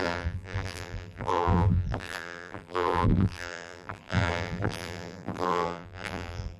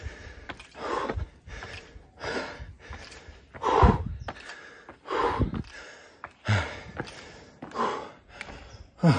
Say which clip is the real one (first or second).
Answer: second